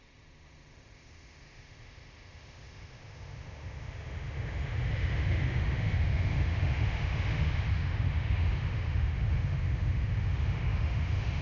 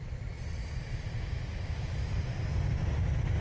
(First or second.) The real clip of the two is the second